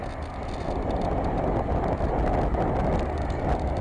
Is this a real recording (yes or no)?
yes